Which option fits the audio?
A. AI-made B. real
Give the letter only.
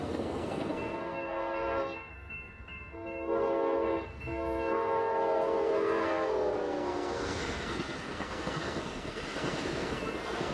A